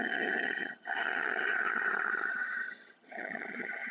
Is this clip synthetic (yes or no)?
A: yes